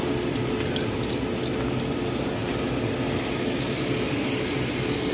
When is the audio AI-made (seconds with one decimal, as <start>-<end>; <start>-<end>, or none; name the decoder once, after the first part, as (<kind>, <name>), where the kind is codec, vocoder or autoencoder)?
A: none